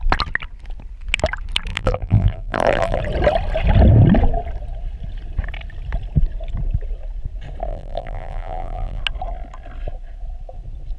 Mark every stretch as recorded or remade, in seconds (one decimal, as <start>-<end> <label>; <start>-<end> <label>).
0.0-1.7 recorded; 1.7-3.0 remade; 3.0-7.7 recorded; 7.7-9.0 remade; 9.0-11.0 recorded